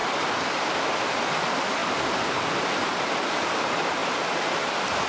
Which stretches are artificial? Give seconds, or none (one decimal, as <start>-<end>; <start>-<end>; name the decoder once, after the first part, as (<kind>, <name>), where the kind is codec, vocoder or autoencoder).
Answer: 1.0-1.8 (vocoder, BigVGAN v2); 2.3-5.1